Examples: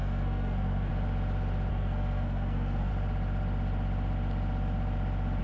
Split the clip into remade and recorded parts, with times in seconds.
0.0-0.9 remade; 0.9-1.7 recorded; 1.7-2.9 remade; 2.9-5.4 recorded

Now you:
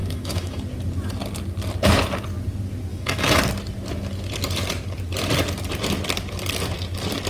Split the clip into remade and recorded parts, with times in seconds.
0.0-0.6 remade; 0.6-2.9 recorded; 2.9-3.4 remade; 3.4-7.3 recorded

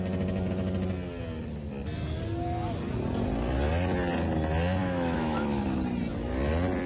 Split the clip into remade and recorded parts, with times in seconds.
0.0-4.8 recorded; 4.8-5.6 remade; 5.6-6.9 recorded

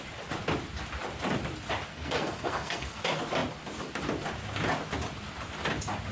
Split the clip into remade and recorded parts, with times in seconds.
0.0-1.9 recorded; 1.9-3.0 remade; 3.0-6.1 recorded

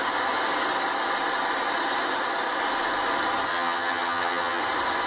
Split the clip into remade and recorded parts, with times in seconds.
0.0-3.5 recorded; 3.5-4.6 remade; 4.6-5.1 recorded

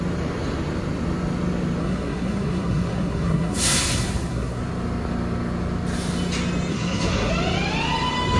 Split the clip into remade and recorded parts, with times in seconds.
0.0-1.8 recorded; 1.8-4.6 remade; 4.6-6.7 recorded; 6.7-7.3 remade; 7.3-8.4 recorded

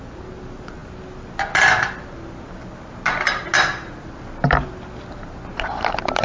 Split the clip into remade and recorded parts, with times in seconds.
0.0-6.2 recorded